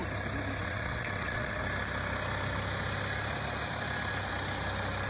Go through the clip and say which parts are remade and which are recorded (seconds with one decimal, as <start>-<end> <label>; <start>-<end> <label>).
0.0-0.6 recorded; 0.6-1.6 remade; 1.6-5.1 recorded